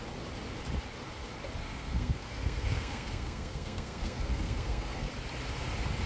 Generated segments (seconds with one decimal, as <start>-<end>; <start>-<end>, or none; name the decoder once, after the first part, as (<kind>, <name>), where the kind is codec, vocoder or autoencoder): 1.6-5.1 (codec, SNAC)